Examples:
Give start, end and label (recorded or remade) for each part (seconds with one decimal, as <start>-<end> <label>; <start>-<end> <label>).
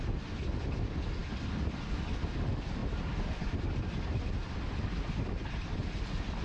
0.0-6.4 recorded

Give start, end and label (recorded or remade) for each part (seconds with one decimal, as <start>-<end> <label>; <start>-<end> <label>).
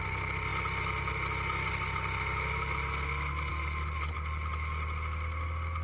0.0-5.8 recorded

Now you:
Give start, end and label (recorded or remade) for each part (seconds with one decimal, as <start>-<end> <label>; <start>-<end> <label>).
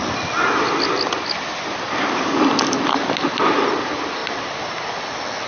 0.0-5.5 recorded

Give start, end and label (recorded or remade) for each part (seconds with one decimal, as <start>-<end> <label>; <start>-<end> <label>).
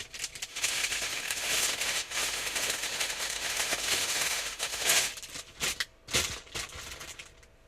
0.0-0.5 recorded; 0.5-5.1 remade; 5.1-7.7 recorded